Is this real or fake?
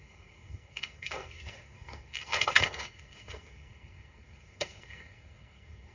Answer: fake